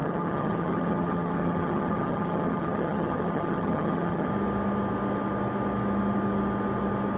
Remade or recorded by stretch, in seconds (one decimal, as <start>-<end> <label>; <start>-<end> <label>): 0.0-4.3 remade; 4.3-7.2 recorded